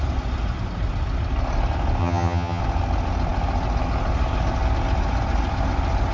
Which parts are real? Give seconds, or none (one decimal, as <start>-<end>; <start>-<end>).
0.0-2.0; 2.6-6.1